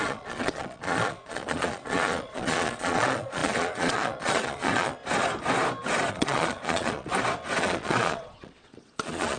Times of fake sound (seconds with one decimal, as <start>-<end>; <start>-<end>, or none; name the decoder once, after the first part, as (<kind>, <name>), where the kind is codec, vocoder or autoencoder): 0.0-5.0 (vocoder, Vocos); 6.1-7.1; 7.6-9.4